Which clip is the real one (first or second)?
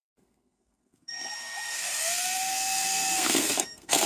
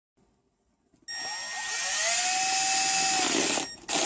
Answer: second